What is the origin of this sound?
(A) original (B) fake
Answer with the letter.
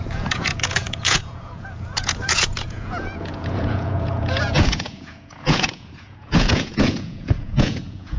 B